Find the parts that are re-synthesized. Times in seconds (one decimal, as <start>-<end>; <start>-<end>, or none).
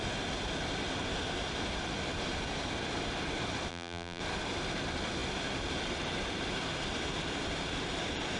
3.7-4.2